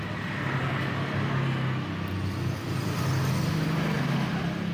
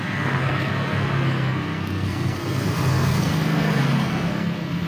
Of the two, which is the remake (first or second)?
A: second